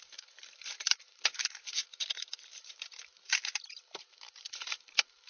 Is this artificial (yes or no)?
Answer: yes